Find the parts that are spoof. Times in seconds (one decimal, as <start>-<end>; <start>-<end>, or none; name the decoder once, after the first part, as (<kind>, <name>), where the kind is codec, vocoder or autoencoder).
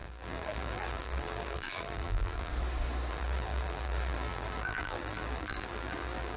0.0-2.5 (vocoder, BigVGAN v2); 3.1-6.4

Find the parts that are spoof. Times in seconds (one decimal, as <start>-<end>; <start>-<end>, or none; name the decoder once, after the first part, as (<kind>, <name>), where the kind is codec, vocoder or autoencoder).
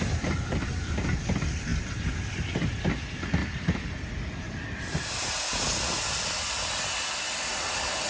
3.4-5.1 (vocoder, BigVGAN v2)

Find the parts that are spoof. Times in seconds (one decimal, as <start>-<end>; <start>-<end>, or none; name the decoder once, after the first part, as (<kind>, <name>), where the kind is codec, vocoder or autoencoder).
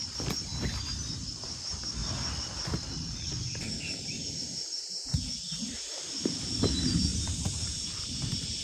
0.0-0.5 (vocoder, BigVGAN v2); 1.3-2.0; 4.4-5.1; 5.8-8.6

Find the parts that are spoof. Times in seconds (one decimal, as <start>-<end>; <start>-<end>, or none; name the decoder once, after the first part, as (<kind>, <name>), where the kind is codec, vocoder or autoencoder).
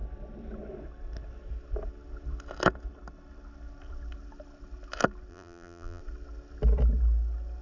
5.3-6.0 (vocoder, BigVGAN v2)